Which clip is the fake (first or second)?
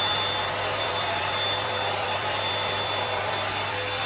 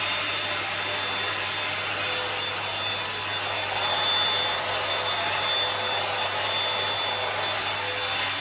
first